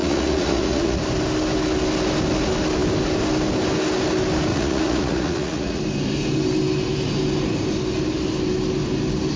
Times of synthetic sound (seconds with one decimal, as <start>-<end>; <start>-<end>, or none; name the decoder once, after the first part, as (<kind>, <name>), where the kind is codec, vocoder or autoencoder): 0.0-1.0 (vocoder, Vocos); 4.5-5.8